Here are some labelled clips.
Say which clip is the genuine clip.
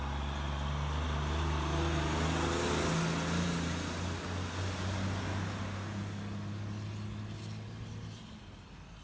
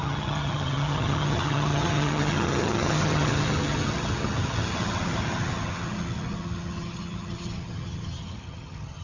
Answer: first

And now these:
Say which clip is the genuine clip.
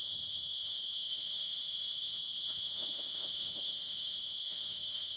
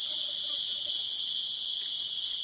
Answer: second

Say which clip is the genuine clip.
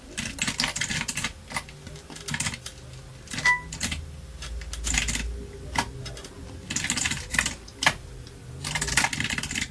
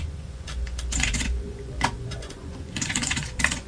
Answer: first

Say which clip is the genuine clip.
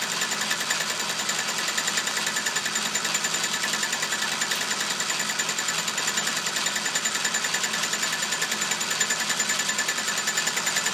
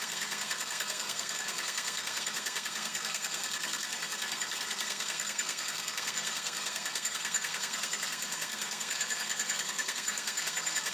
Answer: first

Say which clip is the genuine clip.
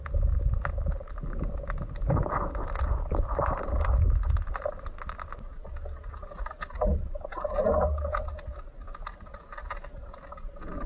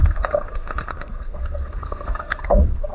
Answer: first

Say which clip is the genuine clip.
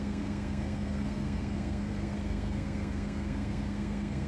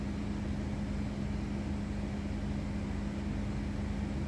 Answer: second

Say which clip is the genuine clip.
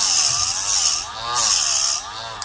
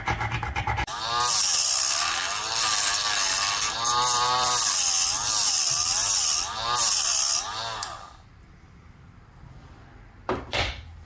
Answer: first